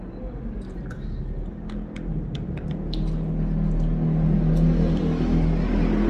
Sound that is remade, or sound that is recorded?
recorded